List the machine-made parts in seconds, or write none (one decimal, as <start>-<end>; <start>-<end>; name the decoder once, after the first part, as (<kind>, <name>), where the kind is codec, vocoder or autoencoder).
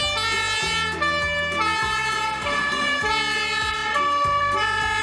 none